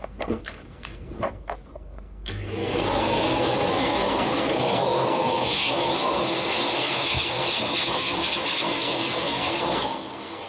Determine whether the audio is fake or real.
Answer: fake